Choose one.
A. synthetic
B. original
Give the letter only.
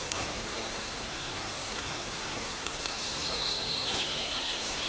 A